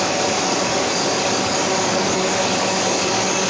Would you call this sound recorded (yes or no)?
no